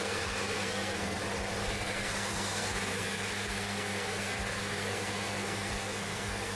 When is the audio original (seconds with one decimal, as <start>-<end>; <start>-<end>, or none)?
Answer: 1.2-1.7